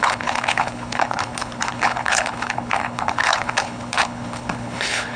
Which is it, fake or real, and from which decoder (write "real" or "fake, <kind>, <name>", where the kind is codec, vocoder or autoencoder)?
fake, codec, HILCodec